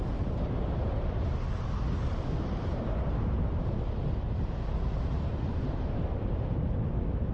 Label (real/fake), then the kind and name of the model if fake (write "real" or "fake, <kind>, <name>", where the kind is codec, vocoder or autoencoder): real